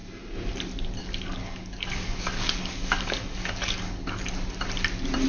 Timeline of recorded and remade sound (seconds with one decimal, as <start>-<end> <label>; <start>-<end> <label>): 0.0-1.0 recorded; 1.0-4.2 remade; 4.2-5.3 recorded